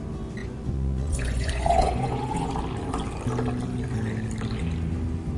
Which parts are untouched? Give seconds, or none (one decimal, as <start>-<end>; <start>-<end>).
0.0-0.4; 2.5-5.4